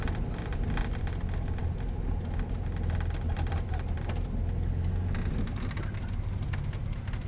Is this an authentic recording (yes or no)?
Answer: yes